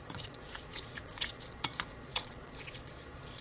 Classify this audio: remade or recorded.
remade